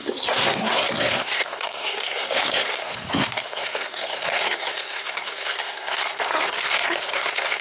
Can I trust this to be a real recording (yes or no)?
no